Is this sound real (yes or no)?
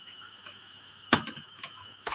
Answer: no